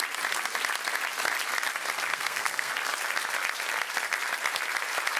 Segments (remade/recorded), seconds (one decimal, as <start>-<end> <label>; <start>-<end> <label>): 0.0-2.1 recorded; 2.1-2.7 remade; 2.7-5.2 recorded